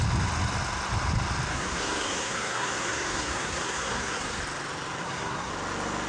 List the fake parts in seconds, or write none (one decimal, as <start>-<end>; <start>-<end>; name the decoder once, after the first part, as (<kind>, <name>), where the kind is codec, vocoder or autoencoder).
1.5-4.4 (codec, SNAC); 5.0-5.5